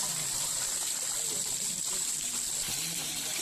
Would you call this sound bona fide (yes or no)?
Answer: no